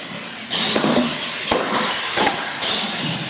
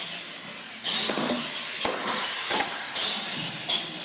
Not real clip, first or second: first